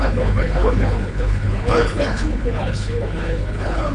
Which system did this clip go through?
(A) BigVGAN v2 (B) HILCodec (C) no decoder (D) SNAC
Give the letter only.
B